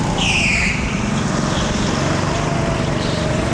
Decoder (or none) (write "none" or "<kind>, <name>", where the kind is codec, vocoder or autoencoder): none